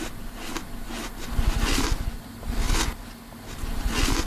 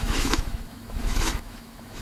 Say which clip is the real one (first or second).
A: first